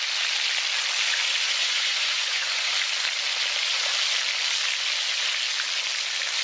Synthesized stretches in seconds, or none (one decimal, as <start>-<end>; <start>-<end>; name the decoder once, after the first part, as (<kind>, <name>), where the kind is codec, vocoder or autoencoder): 1.6-2.7 (vocoder, Vocos)